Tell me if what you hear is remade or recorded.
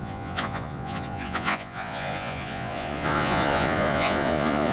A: remade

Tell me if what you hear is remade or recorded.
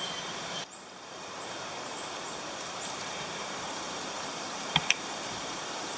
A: remade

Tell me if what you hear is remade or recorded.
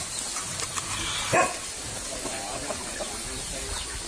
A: recorded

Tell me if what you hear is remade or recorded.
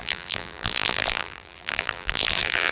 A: remade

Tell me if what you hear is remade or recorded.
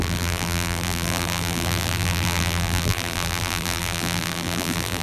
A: remade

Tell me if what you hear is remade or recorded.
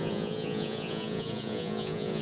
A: remade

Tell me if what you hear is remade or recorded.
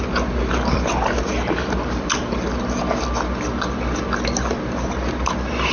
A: recorded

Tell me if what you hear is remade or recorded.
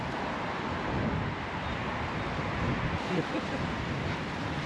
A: recorded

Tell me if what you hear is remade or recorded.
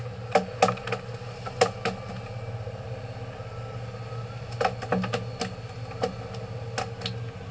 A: recorded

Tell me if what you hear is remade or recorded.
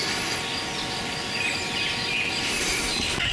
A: recorded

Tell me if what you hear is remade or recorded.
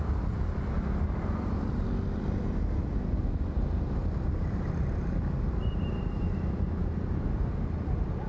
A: recorded